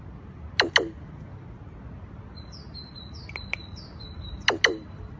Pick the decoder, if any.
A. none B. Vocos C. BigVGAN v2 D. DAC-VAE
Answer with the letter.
A